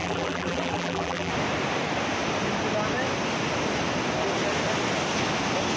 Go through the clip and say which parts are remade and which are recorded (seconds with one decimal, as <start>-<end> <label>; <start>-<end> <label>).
0.0-1.3 remade; 1.3-5.8 recorded